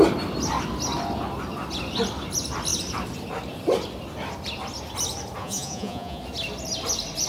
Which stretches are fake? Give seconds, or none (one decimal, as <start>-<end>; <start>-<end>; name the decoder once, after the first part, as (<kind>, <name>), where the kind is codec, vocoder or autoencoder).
5.4-6.2 (vocoder, Vocos)